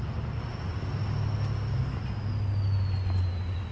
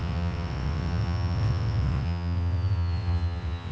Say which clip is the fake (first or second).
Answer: second